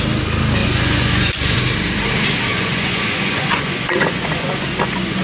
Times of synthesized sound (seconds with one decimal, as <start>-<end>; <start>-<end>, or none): 0.6-1.6; 2.5-5.2